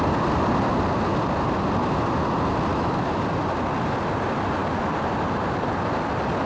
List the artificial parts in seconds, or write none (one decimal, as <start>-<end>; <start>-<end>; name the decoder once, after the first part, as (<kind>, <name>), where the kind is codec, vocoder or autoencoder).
2.7-3.2 (autoencoder, DAC-VAE)